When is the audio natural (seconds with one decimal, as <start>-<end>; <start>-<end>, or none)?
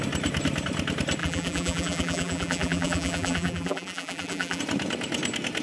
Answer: 0.0-1.2; 4.6-5.6